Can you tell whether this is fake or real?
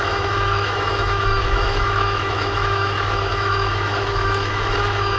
fake